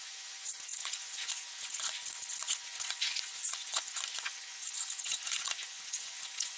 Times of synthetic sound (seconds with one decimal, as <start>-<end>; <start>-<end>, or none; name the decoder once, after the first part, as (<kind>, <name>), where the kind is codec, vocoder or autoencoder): 0.0-6.6 (vocoder, Vocos)